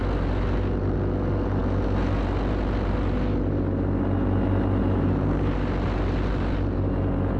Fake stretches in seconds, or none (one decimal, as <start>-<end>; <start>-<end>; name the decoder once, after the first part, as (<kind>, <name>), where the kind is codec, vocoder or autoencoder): none